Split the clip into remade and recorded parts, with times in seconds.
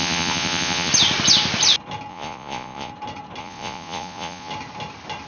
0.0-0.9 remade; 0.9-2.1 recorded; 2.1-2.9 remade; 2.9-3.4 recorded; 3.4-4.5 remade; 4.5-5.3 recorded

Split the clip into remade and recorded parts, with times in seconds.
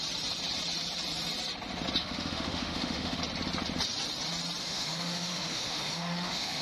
0.0-2.0 recorded; 2.0-3.2 remade; 3.2-4.6 recorded; 4.6-6.6 remade